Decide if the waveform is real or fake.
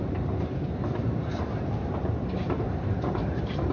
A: fake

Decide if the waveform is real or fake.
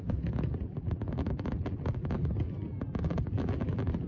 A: fake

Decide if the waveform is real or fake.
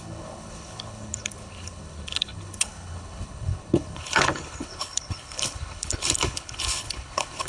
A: fake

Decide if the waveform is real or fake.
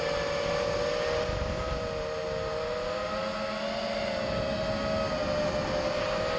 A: real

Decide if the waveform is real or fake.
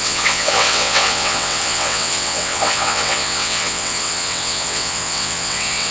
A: fake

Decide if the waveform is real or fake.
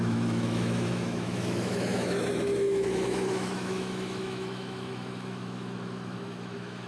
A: fake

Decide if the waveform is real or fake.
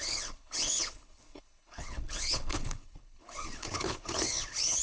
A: fake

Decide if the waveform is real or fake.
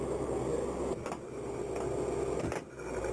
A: real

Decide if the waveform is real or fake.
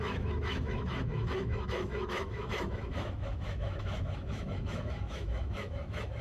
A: fake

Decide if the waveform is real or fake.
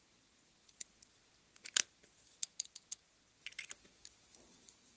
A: real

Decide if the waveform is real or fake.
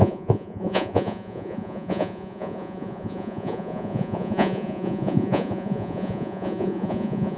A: fake